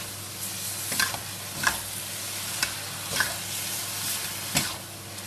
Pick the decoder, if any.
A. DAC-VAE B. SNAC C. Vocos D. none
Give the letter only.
D